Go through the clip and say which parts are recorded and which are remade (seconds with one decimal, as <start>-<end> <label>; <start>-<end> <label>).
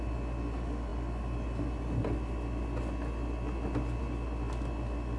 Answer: 0.0-5.2 recorded